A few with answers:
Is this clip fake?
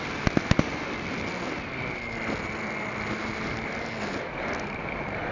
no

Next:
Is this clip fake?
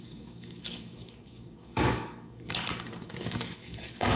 yes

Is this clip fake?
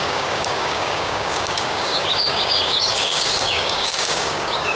yes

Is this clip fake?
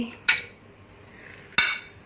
no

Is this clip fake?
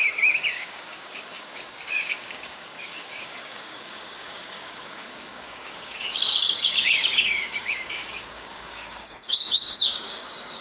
yes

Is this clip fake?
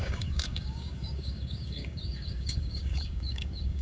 yes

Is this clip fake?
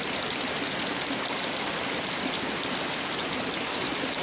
no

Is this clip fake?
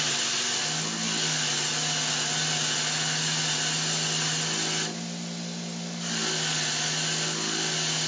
no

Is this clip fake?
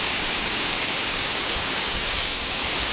yes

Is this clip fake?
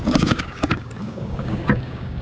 yes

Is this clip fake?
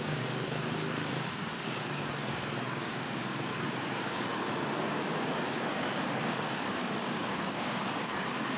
yes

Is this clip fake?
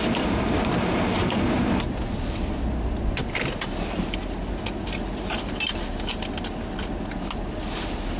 no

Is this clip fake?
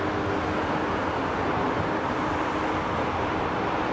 no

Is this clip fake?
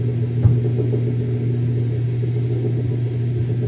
no